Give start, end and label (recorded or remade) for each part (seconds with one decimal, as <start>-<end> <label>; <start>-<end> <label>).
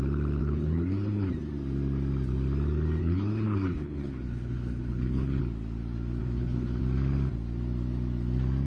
0.0-0.4 recorded; 0.4-1.3 remade; 1.3-3.0 recorded; 3.0-5.4 remade; 5.4-6.2 recorded; 6.2-6.8 remade; 6.8-8.7 recorded